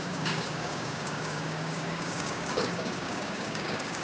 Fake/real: fake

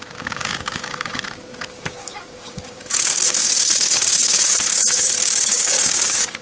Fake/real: fake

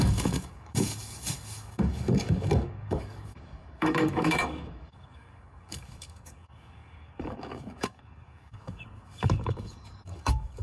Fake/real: fake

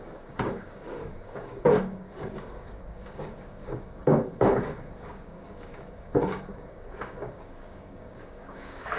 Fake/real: fake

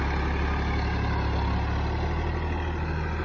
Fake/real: real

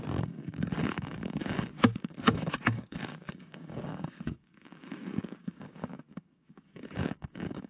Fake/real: fake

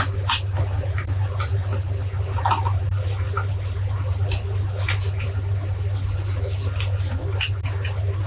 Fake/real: real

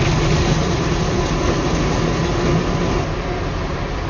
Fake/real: real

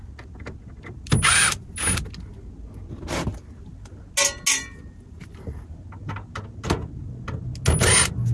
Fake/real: real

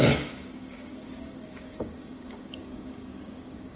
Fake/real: fake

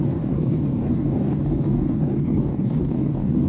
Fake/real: fake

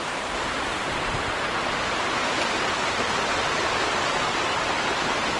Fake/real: real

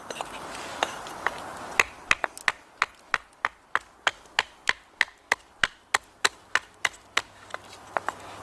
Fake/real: real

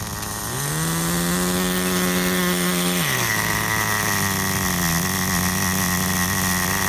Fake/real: real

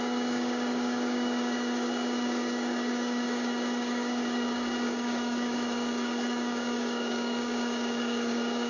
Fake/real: fake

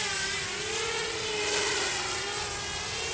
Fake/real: real